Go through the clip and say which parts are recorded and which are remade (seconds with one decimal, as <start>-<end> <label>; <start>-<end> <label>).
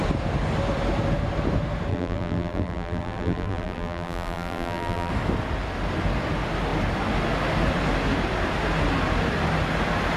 0.0-1.9 recorded; 1.9-5.1 remade; 5.1-10.2 recorded